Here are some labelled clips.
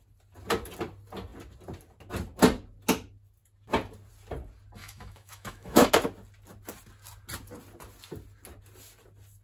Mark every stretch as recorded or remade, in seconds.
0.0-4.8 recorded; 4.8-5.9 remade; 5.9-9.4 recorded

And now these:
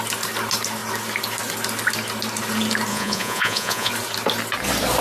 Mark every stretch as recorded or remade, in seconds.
0.0-2.9 recorded; 2.9-3.9 remade; 3.9-5.0 recorded

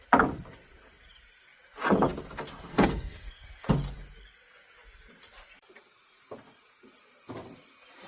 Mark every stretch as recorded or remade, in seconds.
0.0-2.7 recorded; 2.7-3.7 remade; 3.7-8.1 recorded

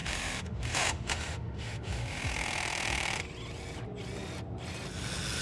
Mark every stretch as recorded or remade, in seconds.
0.0-3.2 remade; 3.2-5.4 recorded

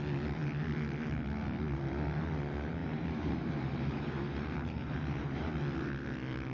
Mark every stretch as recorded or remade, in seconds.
0.0-2.8 recorded; 2.8-5.5 remade; 5.5-6.5 recorded

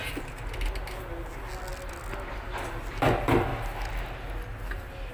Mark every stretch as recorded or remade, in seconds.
0.0-5.1 recorded